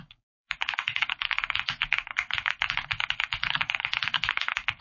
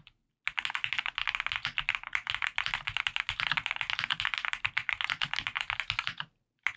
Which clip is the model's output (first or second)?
first